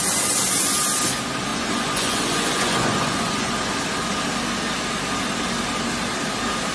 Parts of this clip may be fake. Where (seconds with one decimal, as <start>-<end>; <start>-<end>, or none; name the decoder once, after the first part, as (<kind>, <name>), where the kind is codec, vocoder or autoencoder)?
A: 1.5-3.5 (vocoder, Vocos)